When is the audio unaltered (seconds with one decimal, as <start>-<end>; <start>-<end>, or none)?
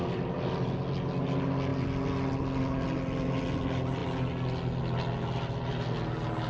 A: 0.0-6.5